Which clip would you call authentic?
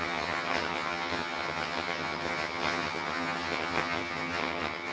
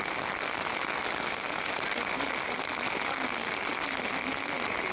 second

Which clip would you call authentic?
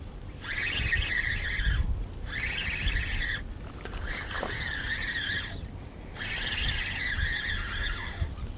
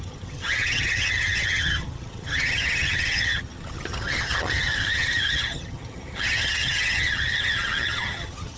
first